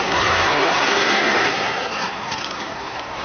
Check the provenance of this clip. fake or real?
fake